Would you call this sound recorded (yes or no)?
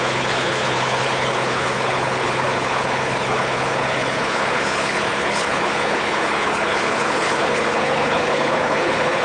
no